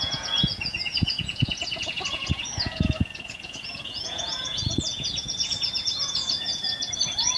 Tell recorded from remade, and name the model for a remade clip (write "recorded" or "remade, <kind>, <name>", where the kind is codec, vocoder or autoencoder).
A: remade, vocoder, Vocos